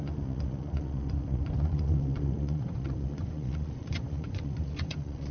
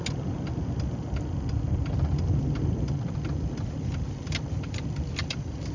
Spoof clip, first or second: first